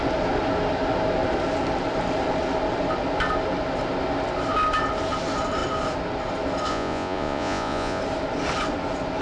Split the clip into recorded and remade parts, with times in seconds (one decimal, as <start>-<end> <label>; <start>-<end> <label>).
0.0-6.7 recorded; 6.7-8.0 remade; 8.0-9.2 recorded